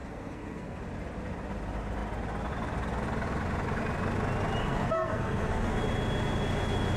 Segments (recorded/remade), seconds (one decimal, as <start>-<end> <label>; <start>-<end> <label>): 0.0-0.8 remade; 0.8-4.6 recorded; 4.6-5.8 remade; 5.8-7.0 recorded

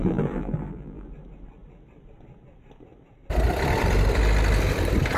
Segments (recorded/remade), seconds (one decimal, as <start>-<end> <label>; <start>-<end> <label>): 0.0-1.1 remade; 1.1-5.2 recorded

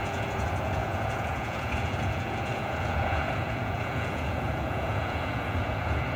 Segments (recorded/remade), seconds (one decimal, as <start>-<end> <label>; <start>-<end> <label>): 0.0-6.2 remade

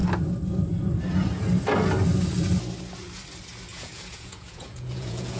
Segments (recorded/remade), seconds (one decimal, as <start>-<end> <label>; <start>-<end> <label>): 0.0-3.7 recorded; 3.7-5.4 remade

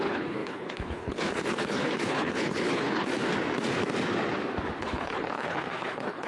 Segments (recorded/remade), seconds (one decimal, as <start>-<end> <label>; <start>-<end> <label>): 0.0-3.1 remade; 3.1-4.8 recorded; 4.8-6.3 remade

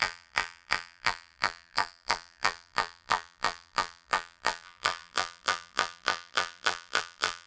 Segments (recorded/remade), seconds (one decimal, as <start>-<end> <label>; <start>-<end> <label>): 0.0-7.5 remade

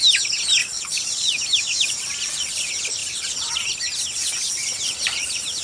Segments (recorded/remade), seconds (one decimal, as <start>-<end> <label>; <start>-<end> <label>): 0.0-0.6 recorded; 0.6-1.3 remade; 1.3-5.6 recorded